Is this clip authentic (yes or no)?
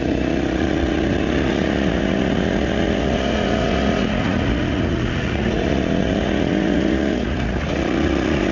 no